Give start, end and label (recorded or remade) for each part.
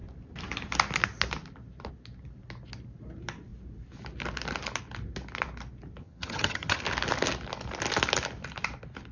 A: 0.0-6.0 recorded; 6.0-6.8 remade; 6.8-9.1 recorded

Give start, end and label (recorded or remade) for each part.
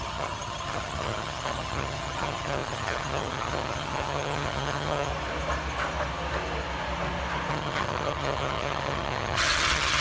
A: 0.0-5.1 remade; 5.1-7.5 recorded; 7.5-10.0 remade